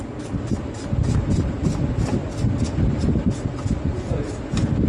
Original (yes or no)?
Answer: yes